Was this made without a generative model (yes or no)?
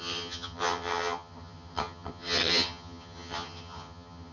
no